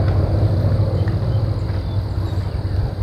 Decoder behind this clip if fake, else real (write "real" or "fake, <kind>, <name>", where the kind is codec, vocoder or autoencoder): real